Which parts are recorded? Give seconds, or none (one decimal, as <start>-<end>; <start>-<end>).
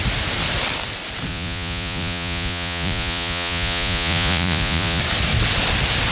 0.0-1.3; 5.0-6.1